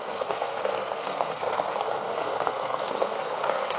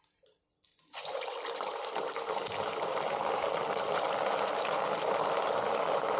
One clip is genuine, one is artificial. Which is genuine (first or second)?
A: second